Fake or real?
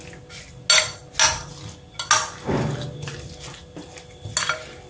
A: real